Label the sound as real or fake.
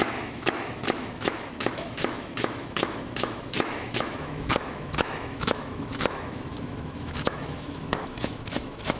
fake